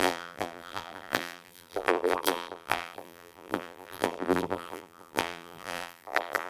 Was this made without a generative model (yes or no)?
no